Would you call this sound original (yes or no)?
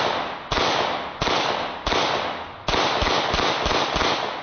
yes